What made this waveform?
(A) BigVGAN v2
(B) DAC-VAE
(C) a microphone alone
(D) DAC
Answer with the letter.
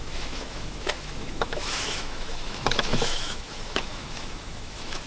B